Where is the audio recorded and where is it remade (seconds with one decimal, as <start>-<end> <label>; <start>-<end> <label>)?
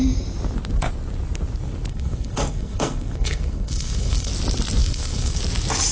0.0-1.9 recorded; 1.9-4.3 remade; 4.3-4.8 recorded; 4.8-5.4 remade; 5.4-5.9 recorded